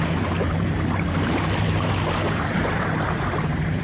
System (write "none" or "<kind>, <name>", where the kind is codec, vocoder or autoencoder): vocoder, BigVGAN v2